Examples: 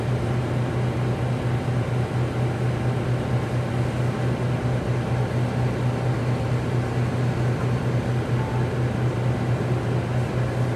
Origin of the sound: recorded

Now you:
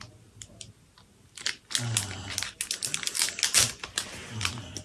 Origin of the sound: recorded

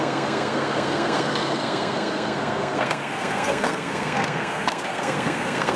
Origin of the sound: remade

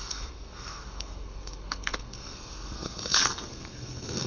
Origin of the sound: remade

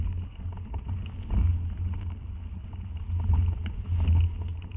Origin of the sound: recorded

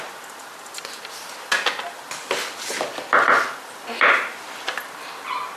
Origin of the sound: recorded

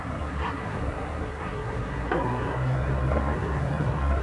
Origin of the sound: remade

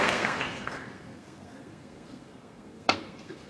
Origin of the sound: remade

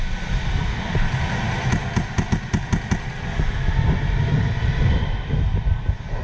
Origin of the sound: recorded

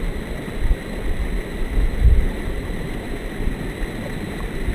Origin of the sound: recorded